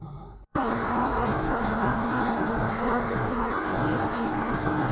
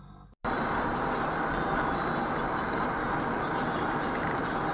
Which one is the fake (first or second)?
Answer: first